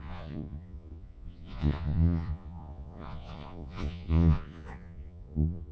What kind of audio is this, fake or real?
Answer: fake